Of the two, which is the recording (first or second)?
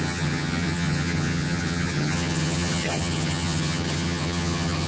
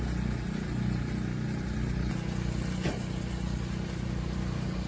second